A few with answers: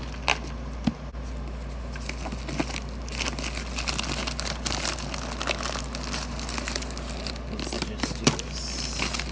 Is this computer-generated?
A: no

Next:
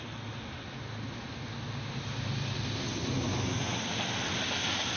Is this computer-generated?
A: no